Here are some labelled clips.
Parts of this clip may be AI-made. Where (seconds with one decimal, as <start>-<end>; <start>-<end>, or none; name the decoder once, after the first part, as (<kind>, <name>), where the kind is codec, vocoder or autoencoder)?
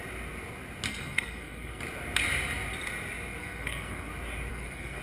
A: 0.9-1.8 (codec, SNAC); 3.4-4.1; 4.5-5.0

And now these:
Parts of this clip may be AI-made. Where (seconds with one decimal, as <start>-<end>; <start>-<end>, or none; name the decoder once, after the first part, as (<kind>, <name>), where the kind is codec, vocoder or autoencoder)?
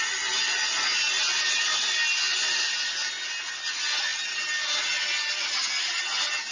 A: 4.1-5.6 (vocoder, BigVGAN v2)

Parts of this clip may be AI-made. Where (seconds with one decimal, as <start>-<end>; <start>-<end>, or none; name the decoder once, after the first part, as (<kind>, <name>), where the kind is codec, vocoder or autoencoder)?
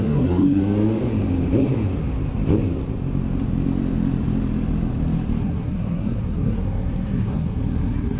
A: 0.0-0.6 (codec, SNAC); 5.4-8.2